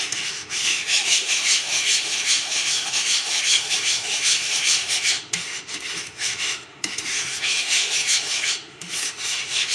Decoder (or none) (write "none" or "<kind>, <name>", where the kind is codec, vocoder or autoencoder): autoencoder, DAC-VAE